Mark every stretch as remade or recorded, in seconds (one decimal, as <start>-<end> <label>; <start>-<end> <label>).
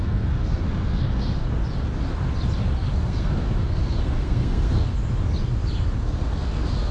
0.0-1.4 remade; 1.4-2.9 recorded; 2.9-4.9 remade; 4.9-6.0 recorded; 6.0-6.9 remade